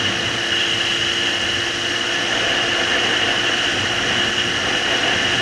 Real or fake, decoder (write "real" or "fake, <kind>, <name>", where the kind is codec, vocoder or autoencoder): real